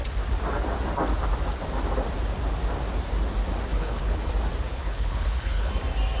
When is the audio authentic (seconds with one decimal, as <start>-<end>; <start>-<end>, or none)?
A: 0.0-3.7; 4.3-4.7; 5.7-6.2